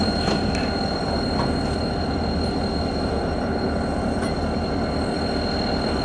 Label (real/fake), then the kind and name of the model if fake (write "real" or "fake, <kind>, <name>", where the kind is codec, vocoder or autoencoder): real